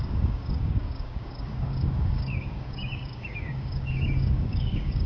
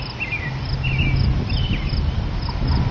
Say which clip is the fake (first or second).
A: first